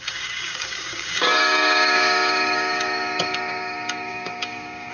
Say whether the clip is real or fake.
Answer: fake